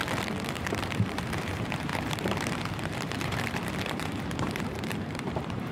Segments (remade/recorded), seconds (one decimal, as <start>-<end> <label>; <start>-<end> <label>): 0.0-0.5 recorded; 0.5-5.7 remade